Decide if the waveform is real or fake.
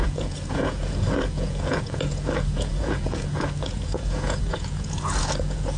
fake